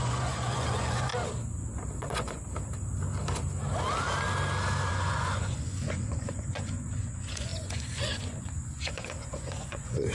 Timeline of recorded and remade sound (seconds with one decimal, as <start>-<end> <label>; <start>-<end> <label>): 0.0-1.1 remade; 1.1-2.0 recorded; 2.0-2.4 remade; 2.4-4.9 recorded; 4.9-10.1 remade